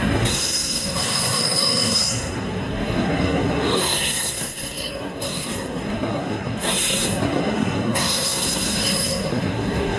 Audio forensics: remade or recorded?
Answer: remade